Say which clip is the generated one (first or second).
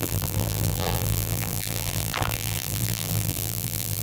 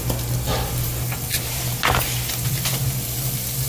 first